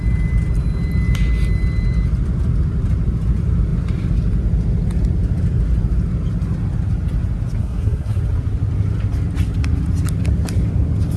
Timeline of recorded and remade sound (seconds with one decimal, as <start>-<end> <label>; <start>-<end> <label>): 0.0-7.6 recorded; 7.6-8.2 remade; 8.2-11.2 recorded